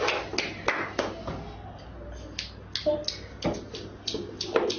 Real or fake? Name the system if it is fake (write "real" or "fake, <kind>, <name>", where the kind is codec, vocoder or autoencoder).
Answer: real